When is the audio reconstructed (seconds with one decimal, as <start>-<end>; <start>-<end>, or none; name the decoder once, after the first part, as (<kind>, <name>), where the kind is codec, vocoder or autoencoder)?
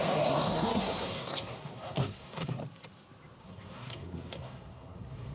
0.0-2.6 (codec, SNAC); 3.4-5.3